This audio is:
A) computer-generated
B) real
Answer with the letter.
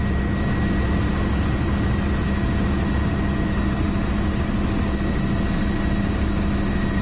B